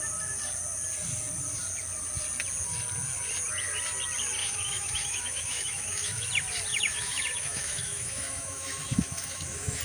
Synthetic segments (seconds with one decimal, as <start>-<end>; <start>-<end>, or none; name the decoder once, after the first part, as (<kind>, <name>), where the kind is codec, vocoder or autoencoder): 4.4-6.3 (autoencoder, DAC-VAE); 6.7-9.8